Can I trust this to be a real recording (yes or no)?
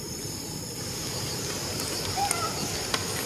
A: no